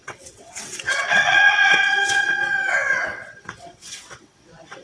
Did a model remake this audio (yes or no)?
yes